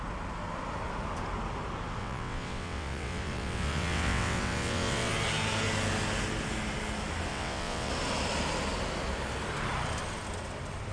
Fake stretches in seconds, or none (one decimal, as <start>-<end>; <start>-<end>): 2.0-5.1; 7.3-7.9